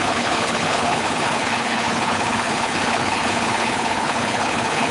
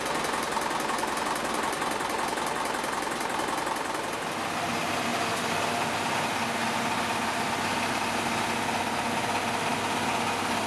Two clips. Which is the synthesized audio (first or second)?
first